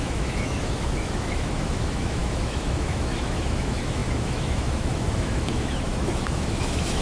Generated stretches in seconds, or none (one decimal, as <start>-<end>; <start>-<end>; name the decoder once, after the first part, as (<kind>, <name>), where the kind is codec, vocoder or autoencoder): 0.0-7.0 (autoencoder, DAC-VAE)